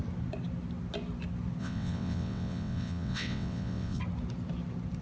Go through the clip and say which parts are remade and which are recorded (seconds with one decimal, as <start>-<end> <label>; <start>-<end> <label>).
0.0-1.6 recorded; 1.6-4.0 remade; 4.0-5.0 recorded